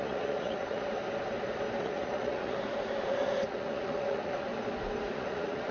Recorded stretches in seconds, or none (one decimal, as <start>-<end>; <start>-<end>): 1.0-1.8; 4.5-5.0